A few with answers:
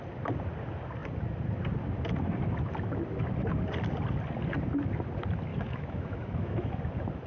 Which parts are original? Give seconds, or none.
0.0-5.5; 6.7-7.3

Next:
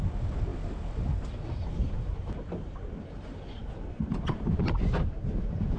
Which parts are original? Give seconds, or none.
0.0-5.8

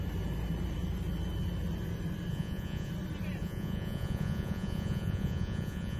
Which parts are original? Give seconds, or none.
0.0-2.3; 2.9-3.4

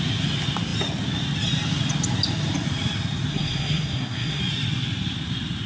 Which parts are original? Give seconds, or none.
0.0-3.3; 4.4-5.7

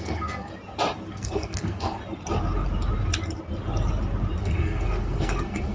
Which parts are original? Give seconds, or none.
0.5-1.1; 2.0-4.4

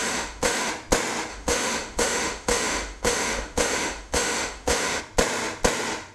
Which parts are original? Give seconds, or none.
0.7-1.3; 5.0-6.1